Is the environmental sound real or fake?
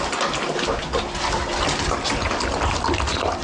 real